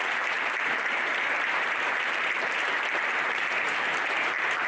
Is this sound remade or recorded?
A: remade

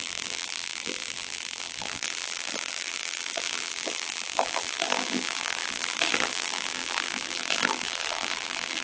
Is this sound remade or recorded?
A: remade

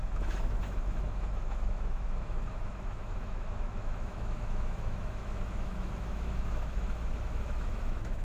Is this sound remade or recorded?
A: remade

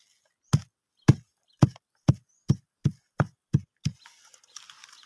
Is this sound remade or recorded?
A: recorded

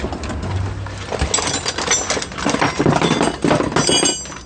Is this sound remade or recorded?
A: recorded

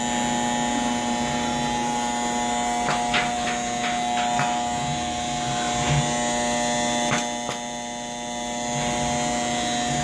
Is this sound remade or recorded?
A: recorded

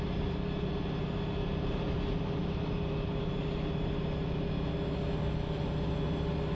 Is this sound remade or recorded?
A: recorded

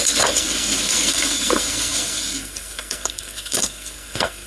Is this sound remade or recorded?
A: remade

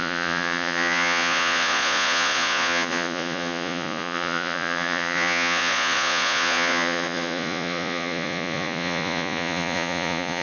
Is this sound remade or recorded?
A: remade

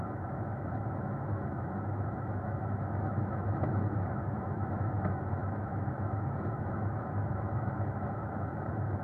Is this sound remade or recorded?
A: remade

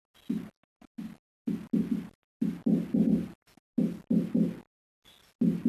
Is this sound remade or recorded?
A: recorded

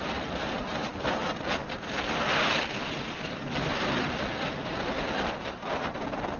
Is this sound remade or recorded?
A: recorded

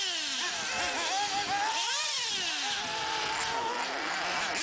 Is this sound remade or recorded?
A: recorded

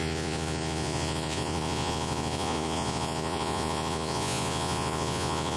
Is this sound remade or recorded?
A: remade